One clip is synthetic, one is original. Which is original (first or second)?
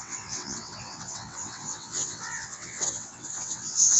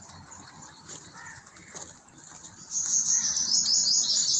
second